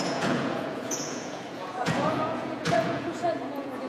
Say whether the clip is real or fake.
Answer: fake